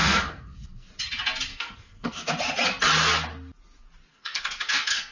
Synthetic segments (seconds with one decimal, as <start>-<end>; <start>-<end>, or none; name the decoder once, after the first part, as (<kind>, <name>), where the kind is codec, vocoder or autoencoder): 0.0-0.9 (codec, SNAC); 1.5-2.3; 4.1-5.1